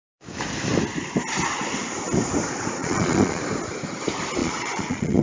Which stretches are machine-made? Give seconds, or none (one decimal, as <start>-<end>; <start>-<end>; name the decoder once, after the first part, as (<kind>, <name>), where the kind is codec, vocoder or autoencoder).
2.8-3.4 (vocoder, Vocos); 4.4-5.2